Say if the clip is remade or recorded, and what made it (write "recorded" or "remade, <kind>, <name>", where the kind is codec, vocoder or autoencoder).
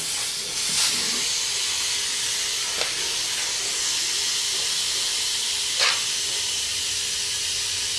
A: recorded